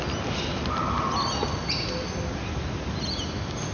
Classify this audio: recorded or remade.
recorded